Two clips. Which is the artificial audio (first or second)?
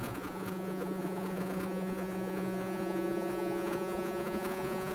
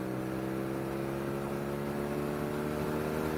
first